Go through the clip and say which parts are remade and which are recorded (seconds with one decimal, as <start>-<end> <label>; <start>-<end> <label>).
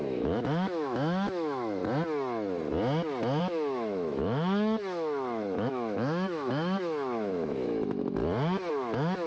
0.0-1.8 remade; 1.8-3.4 recorded; 3.4-8.2 remade; 8.2-8.7 recorded; 8.7-9.3 remade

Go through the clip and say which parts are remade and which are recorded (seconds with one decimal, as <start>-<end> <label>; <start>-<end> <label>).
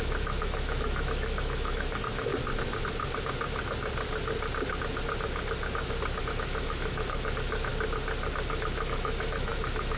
0.0-2.3 remade; 2.3-6.2 recorded; 6.2-7.7 remade; 7.7-8.5 recorded; 8.5-10.0 remade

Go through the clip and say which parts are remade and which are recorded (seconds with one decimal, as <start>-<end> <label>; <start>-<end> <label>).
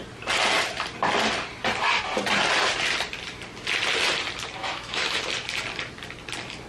0.0-4.6 recorded; 4.6-5.2 remade; 5.2-6.7 recorded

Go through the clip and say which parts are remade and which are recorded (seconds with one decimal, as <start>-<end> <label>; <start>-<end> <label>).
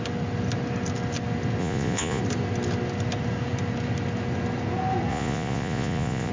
0.0-1.6 recorded; 1.6-2.2 remade; 2.2-5.1 recorded; 5.1-6.3 remade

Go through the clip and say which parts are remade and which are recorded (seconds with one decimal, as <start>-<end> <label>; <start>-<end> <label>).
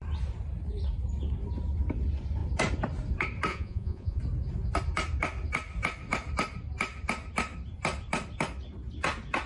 0.0-3.5 recorded; 3.5-4.2 remade; 4.2-9.5 recorded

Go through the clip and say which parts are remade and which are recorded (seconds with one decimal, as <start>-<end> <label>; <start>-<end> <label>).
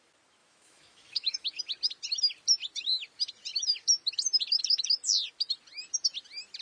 0.0-0.4 recorded; 0.4-1.6 remade; 1.6-6.6 recorded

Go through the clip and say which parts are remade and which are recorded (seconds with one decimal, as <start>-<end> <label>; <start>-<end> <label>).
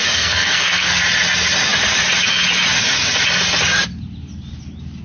0.0-1.0 remade; 1.0-5.0 recorded